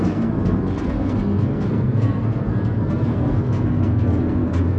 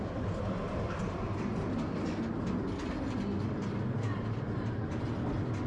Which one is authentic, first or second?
second